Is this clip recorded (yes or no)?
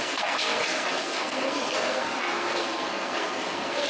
no